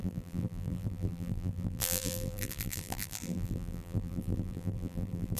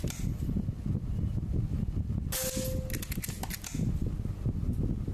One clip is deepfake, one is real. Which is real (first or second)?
second